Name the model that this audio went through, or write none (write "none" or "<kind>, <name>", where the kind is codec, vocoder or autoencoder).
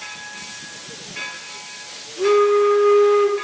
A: none